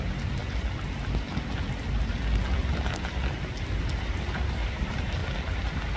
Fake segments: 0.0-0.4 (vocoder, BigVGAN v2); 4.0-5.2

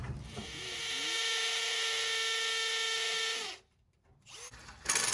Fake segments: 0.0-0.4 (vocoder, BigVGAN v2); 3.5-4.1

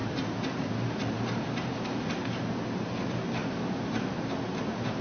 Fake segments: 0.0-2.1 (vocoder, BigVGAN v2); 3.4-4.4

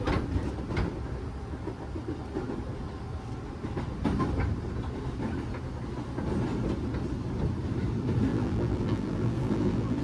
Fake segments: 8.3-10.0 (vocoder, BigVGAN v2)

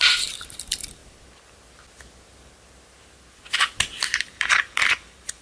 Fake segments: 0.0-1.0 (vocoder, BigVGAN v2); 4.2-5.4

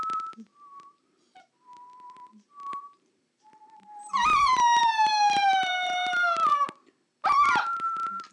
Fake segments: 0.0-6.5 (vocoder, BigVGAN v2); 7.6-8.3